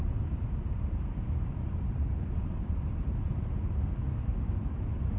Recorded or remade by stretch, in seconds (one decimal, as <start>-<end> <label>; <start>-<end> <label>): 0.0-2.9 remade; 2.9-5.2 recorded